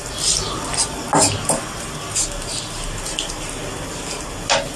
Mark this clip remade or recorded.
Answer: recorded